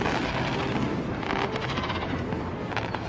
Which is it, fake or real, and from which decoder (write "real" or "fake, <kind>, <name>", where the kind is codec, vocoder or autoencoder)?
real